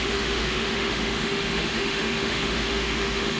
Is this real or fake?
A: fake